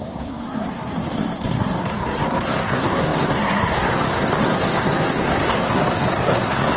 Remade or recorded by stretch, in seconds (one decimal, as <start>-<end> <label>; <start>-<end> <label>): 0.0-6.8 remade